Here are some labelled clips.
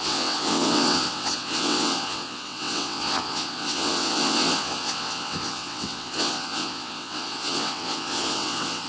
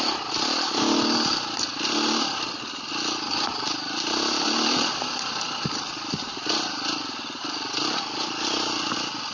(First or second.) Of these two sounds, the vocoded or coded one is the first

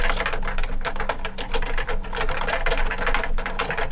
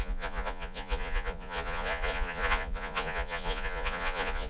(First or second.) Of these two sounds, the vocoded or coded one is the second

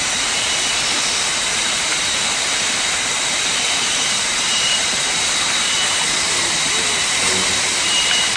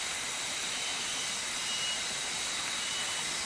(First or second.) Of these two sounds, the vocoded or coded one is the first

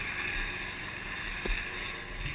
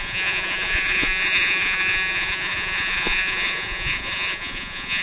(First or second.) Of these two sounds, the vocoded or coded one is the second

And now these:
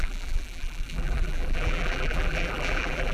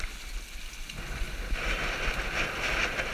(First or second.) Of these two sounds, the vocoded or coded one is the first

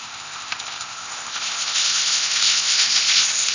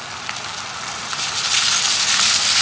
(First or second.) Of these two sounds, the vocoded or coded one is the first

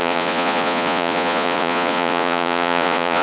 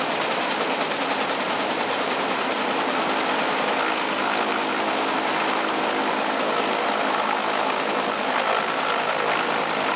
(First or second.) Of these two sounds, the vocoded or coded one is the first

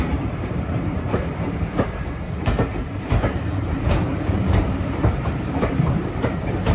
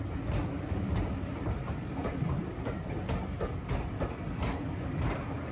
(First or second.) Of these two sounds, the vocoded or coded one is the first